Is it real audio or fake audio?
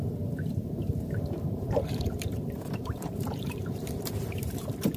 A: fake